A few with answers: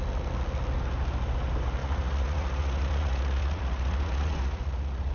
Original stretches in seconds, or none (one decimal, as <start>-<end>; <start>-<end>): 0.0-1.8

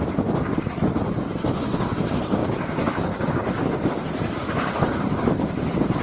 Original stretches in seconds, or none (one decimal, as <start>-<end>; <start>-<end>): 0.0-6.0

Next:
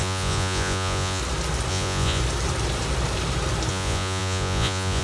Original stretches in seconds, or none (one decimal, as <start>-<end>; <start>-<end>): 1.2-1.7; 2.2-3.7

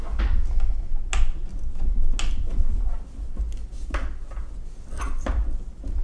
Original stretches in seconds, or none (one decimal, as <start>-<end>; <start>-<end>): 0.0-6.0